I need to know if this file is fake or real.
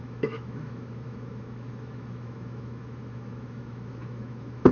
fake